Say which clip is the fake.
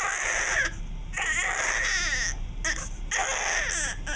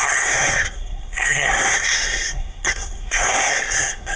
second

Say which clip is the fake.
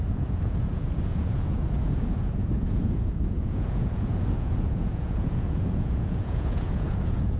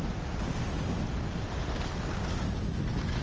first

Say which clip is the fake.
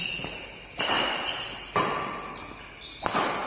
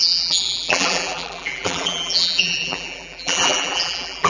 second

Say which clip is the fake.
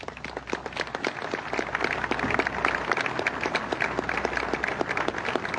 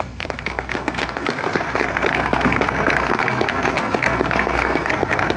second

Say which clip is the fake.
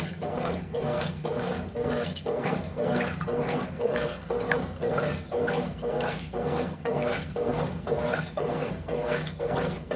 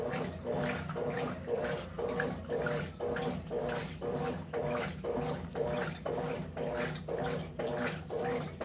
first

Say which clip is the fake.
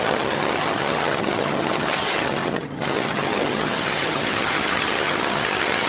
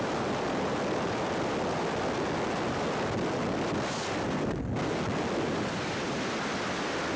first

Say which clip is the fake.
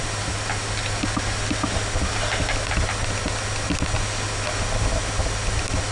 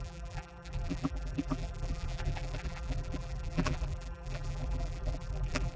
second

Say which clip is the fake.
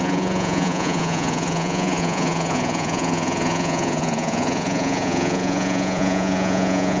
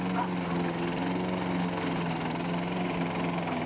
first